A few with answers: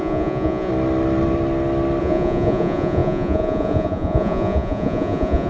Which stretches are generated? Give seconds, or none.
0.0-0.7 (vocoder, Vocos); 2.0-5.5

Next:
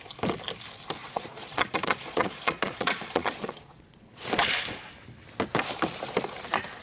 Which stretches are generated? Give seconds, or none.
1.0-4.3 (vocoder, Vocos)

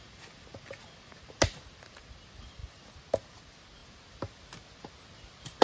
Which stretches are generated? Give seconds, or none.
none

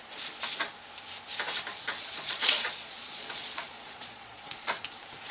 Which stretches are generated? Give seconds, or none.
1.7-4.8 (vocoder, Vocos)

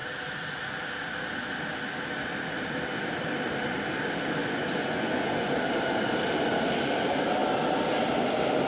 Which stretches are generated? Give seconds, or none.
4.4-5.5 (vocoder, Vocos)

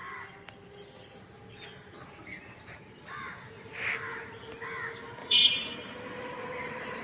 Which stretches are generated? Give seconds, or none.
5.2-5.7 (vocoder, Vocos)